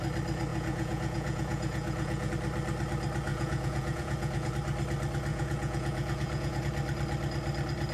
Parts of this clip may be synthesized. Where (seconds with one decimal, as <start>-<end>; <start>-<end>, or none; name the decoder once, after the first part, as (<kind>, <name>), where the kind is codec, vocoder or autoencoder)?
0.5-2.3 (vocoder, Vocos); 3.3-4.5; 5.3-6.6